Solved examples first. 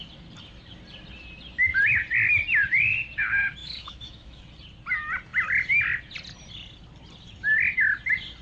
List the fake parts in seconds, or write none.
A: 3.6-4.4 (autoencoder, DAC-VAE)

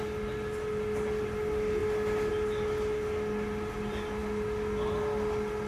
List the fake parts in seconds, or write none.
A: none

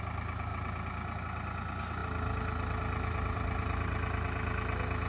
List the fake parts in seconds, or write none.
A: none

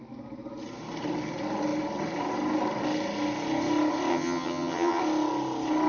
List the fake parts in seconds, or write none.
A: 4.1-5.0 (vocoder, HiFi-GAN)

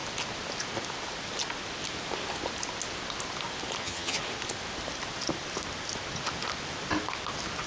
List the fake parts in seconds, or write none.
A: 3.8-4.2 (vocoder, HiFi-GAN)

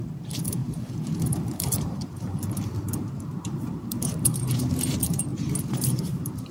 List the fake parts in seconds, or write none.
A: 0.0-6.5 (vocoder, BigVGAN v2)

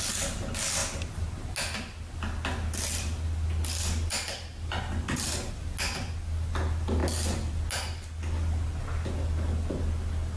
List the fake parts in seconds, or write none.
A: none

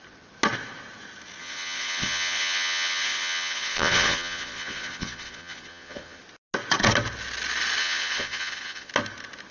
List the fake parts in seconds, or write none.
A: 1.4-6.2 (vocoder, Vocos); 7.8-8.9